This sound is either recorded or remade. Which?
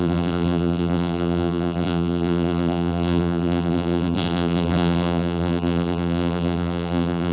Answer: remade